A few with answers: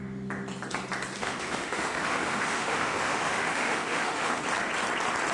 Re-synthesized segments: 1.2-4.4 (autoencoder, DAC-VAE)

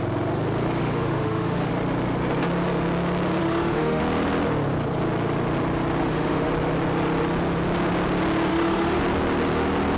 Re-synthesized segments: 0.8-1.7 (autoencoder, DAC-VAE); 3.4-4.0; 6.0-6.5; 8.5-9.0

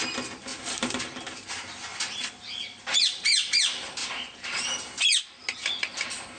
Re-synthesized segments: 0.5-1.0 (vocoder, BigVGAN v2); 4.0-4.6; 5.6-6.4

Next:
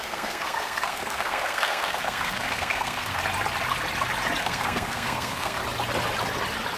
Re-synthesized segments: 0.0-3.2 (codec, SNAC); 4.4-5.6

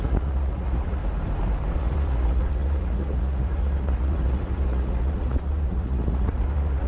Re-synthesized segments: 0.0-1.0 (vocoder, Vocos); 1.7-6.9

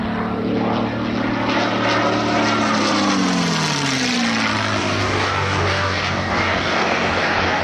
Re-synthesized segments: 4.8-7.6 (codec, DAC)